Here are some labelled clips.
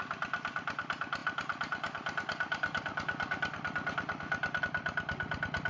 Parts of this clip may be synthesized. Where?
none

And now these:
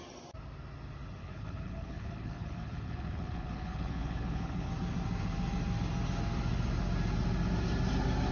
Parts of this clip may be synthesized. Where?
1.2-4.7

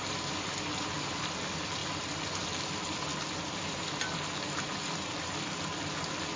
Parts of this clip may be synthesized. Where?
none

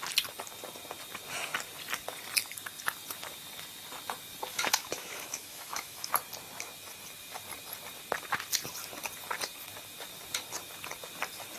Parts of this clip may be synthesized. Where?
4.5-6.1